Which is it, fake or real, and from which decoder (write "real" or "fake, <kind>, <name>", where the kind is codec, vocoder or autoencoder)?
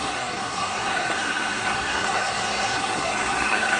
fake, codec, SNAC